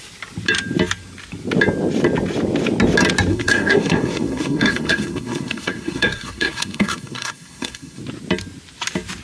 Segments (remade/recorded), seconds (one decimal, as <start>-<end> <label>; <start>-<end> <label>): 0.0-3.3 recorded; 3.3-8.0 remade; 8.0-9.2 recorded